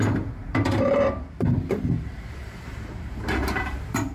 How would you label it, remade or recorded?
remade